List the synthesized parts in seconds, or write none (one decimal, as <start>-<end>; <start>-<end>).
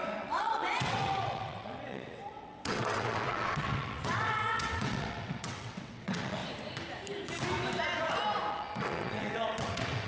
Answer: 0.0-6.4; 8.5-10.1